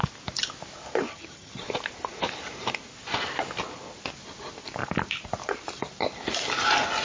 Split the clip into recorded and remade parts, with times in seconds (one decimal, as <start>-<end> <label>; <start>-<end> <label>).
0.0-1.1 recorded; 1.1-1.6 remade; 1.6-7.0 recorded